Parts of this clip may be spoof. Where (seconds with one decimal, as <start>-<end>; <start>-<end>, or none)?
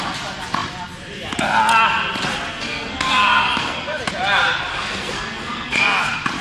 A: 2.5-4.0; 4.7-5.8